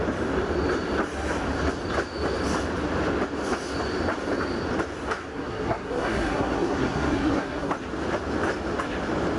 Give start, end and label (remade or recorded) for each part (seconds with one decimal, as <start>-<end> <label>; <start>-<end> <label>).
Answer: 0.0-5.3 recorded; 5.3-7.7 remade; 7.7-9.4 recorded